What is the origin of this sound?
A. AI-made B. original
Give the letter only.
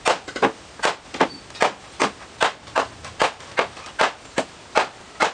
B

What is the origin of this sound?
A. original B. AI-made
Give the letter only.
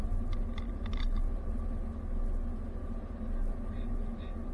A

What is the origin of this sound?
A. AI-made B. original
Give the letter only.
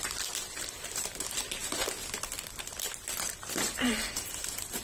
A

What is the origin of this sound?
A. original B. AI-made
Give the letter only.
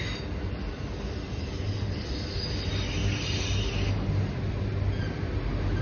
A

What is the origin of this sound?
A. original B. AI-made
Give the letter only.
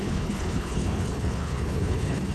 B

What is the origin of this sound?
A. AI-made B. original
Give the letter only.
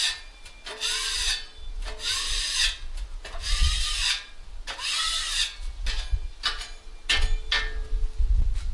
B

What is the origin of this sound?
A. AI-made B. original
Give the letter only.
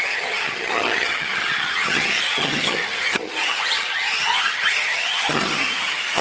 A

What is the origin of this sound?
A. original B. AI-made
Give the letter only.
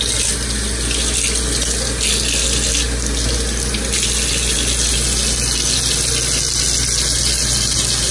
A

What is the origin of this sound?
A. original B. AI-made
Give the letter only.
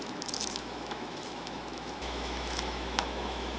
B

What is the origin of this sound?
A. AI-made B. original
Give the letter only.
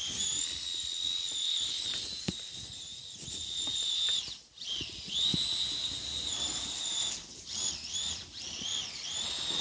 B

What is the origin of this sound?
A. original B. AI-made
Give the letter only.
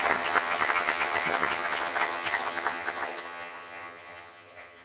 B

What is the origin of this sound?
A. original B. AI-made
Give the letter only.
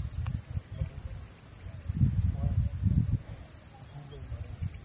A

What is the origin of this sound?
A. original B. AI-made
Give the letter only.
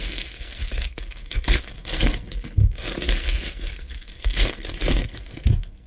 B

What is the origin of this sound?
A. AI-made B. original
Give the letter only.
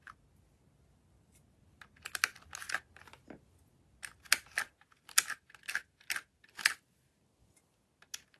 B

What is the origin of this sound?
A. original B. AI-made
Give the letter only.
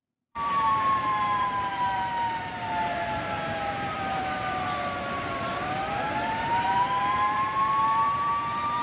B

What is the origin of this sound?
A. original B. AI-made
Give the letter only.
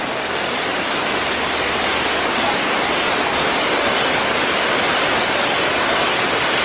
A